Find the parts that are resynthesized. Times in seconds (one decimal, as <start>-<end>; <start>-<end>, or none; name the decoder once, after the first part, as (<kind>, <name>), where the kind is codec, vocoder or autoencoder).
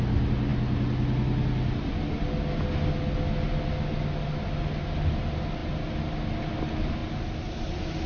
none